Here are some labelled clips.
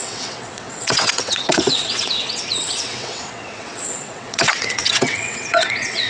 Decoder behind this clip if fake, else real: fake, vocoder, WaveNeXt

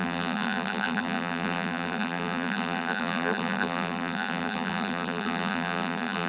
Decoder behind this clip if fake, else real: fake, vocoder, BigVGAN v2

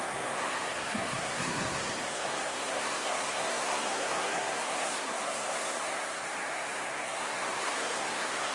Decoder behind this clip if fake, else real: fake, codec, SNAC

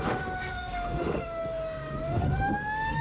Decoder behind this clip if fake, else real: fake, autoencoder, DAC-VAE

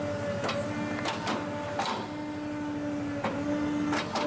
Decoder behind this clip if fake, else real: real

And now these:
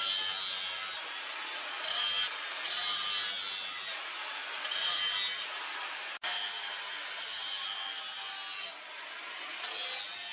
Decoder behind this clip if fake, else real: real